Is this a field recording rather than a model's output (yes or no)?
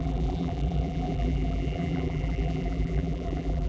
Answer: no